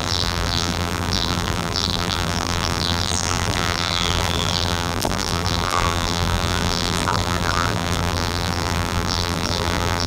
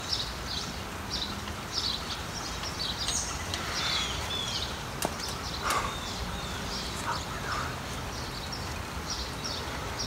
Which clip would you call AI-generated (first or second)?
first